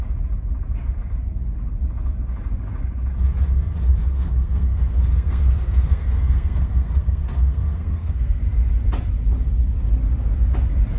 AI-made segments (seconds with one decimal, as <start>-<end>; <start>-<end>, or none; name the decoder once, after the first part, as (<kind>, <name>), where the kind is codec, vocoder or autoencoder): 4.0-8.4 (codec, SNAC)